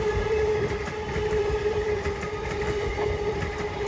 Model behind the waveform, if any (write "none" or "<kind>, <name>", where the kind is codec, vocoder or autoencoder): vocoder, BigVGAN v2